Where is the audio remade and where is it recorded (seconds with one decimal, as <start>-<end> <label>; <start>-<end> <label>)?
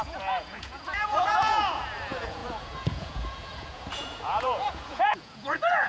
0.0-5.9 remade